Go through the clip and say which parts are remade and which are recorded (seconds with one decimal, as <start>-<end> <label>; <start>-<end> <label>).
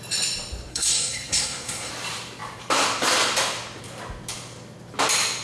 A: 0.0-0.7 recorded; 0.7-1.9 remade; 1.9-5.4 recorded